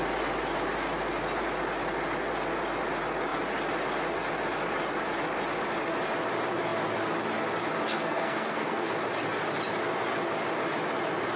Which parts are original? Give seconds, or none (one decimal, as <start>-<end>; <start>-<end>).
0.0-7.9; 8.9-11.4